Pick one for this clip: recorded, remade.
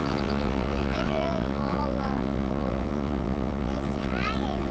remade